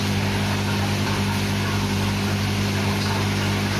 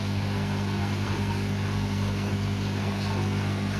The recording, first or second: first